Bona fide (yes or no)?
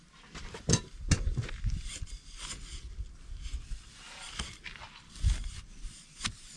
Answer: yes